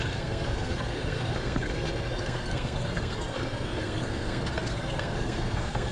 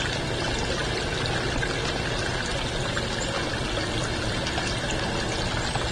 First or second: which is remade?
first